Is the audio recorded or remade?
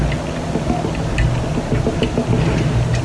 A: recorded